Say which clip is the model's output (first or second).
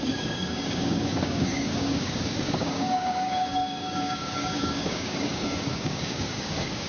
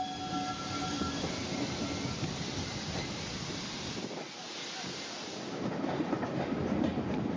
first